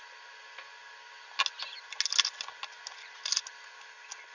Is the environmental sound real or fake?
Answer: real